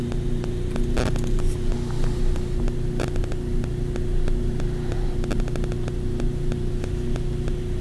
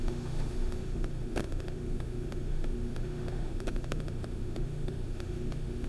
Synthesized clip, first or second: second